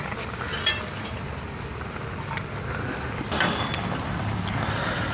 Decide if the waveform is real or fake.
real